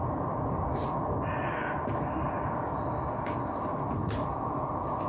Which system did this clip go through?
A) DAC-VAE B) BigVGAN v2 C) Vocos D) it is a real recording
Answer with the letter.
D